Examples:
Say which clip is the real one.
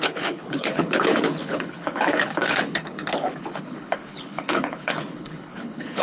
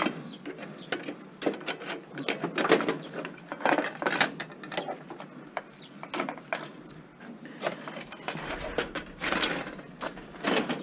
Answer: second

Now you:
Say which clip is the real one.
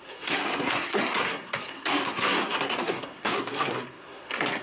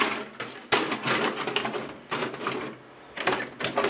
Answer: second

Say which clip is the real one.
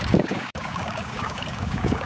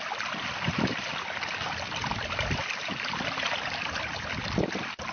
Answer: second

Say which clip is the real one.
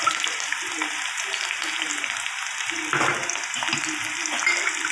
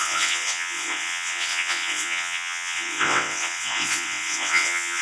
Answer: first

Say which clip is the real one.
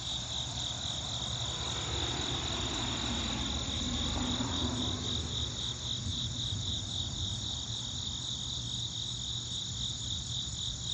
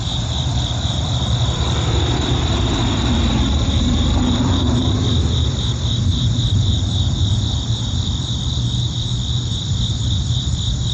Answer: first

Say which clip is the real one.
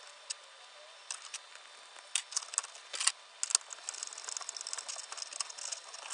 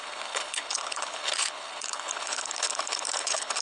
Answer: first